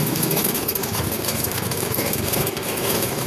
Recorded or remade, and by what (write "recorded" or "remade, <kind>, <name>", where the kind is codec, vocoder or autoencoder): remade, codec, DAC